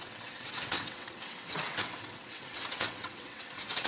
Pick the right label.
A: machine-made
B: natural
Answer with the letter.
A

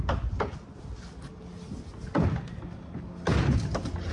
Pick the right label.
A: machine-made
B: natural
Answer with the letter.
B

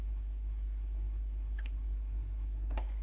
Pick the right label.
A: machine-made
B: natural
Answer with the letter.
A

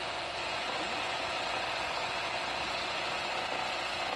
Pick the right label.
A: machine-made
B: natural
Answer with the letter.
A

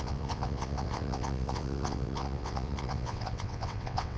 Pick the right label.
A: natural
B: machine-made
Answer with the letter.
B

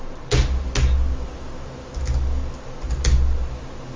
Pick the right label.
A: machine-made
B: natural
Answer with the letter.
B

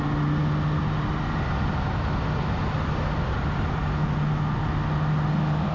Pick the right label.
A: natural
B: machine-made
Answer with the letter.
A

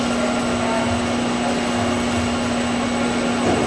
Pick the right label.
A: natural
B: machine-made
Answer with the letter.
A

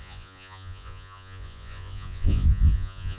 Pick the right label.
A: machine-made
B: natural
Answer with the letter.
A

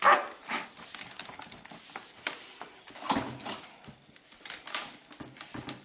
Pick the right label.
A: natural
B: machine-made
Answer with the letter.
A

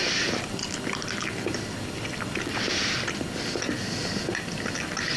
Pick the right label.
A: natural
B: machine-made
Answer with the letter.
A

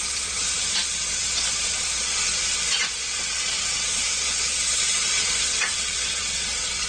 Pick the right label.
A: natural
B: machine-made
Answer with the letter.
B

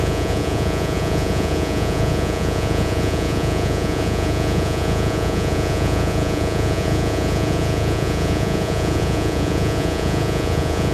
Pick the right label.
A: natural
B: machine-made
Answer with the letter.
B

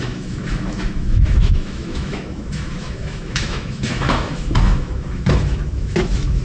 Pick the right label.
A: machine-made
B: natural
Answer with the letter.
A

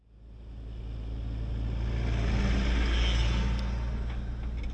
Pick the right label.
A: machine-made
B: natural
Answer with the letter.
B